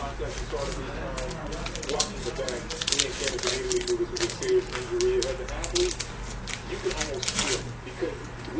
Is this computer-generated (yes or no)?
no